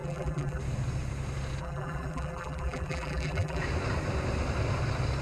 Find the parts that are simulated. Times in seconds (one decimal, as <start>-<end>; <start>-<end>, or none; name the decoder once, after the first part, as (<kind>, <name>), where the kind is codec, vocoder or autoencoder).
0.0-0.6 (vocoder, BigVGAN v2); 1.6-3.6